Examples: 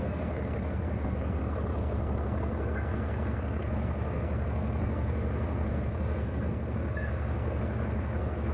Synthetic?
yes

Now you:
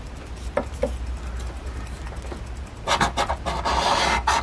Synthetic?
no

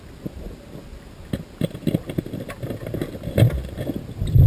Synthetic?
no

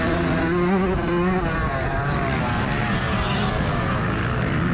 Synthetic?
no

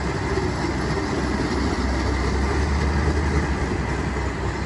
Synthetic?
no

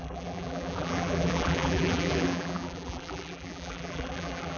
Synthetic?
yes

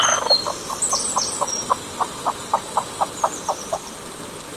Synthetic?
no